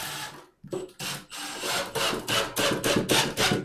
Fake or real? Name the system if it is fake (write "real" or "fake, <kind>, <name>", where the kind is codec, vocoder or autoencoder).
real